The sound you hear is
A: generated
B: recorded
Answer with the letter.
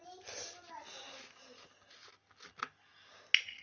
B